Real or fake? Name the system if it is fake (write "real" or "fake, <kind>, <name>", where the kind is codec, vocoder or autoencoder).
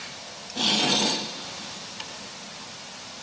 real